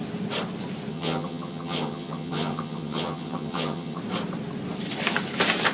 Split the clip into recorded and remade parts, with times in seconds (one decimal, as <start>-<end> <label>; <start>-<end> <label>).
0.0-0.9 recorded; 0.9-4.0 remade; 4.0-5.7 recorded